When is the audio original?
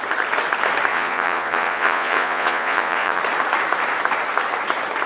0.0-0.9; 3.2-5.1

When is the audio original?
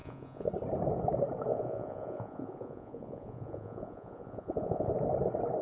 0.5-1.5; 4.9-5.6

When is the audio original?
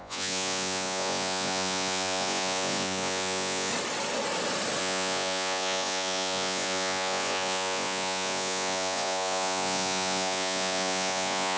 3.7-4.8